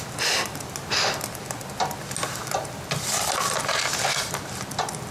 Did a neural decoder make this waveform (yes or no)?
no